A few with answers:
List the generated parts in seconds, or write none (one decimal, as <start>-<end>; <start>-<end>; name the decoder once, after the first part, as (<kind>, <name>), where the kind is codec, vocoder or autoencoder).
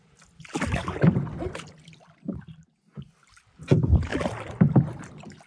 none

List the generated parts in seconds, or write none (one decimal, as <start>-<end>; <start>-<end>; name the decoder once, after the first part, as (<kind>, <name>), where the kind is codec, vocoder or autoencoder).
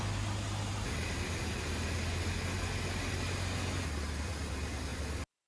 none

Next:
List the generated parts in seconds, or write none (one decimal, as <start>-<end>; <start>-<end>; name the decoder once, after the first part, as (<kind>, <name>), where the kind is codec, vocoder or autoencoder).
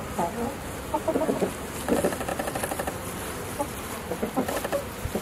2.3-4.1 (vocoder, BigVGAN v2)